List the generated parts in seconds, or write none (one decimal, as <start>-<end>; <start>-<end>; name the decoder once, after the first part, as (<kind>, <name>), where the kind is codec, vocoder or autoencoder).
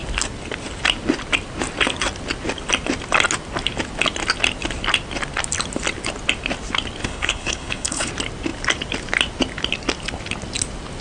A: 7.0-8.1 (codec, HILCodec)